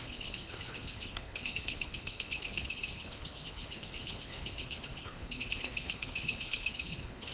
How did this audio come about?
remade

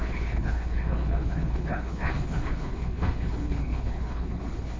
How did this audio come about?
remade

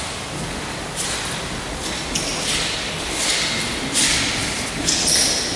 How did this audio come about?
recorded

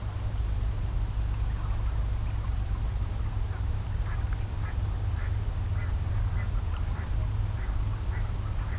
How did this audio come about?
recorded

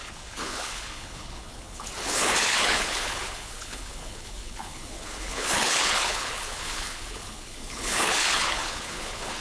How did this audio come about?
remade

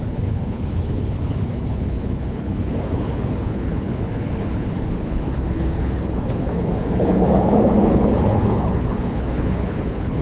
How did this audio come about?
remade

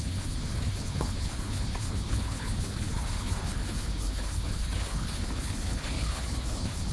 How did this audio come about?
remade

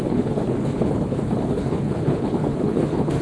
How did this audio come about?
remade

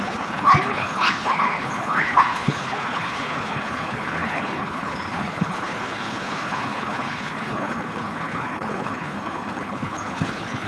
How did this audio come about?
remade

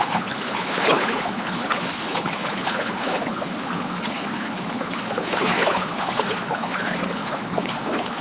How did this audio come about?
remade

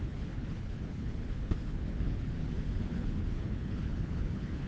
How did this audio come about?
remade